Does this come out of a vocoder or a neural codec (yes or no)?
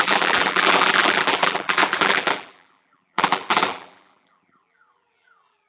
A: yes